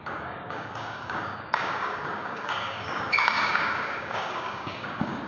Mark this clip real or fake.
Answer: fake